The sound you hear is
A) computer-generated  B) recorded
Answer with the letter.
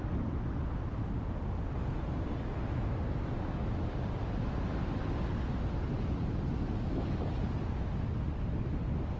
B